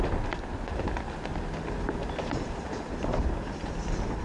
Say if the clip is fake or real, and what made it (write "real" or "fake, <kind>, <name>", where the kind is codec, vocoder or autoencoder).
real